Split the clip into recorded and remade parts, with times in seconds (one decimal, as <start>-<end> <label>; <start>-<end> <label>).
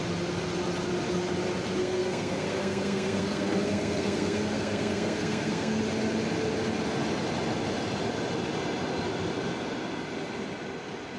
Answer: 0.0-1.8 recorded; 1.8-5.8 remade; 5.8-11.2 recorded